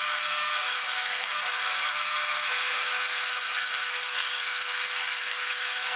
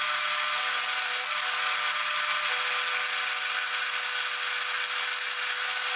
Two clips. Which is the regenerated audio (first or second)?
first